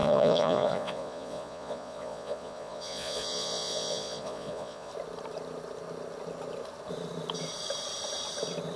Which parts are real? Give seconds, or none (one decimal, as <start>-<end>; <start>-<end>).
4.9-8.8